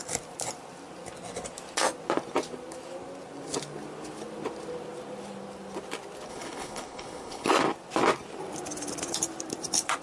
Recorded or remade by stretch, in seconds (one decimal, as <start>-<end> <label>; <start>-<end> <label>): 0.0-6.3 recorded; 6.3-7.5 remade; 7.5-10.0 recorded